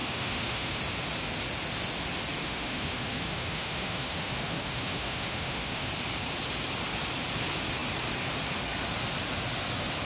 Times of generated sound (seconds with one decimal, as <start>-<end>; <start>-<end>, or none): 0.0-0.8; 2.4-5.9